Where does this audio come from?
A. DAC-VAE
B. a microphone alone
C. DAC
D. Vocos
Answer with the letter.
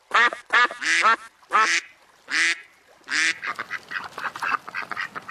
B